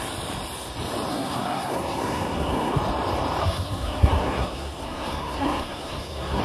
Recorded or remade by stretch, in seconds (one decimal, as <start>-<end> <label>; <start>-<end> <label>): 0.0-1.1 recorded; 1.1-2.8 remade; 2.8-3.4 recorded; 3.4-6.4 remade

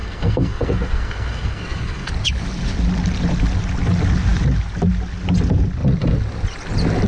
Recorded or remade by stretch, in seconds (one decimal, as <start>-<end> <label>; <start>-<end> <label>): 0.0-2.1 remade; 2.1-7.1 recorded

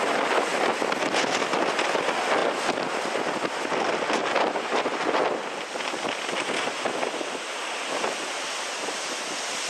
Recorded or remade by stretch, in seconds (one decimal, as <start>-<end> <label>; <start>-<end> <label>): 0.0-9.7 recorded